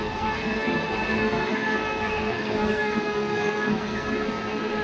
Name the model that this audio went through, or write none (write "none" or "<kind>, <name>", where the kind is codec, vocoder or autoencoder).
codec, SNAC